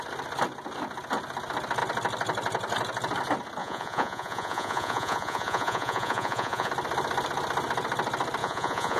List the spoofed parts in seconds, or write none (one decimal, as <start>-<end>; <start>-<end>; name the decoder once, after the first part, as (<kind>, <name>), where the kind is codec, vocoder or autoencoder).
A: 3.6-6.7 (vocoder, Vocos); 8.4-9.0